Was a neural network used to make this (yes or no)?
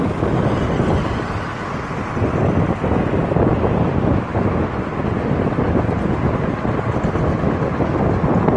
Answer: no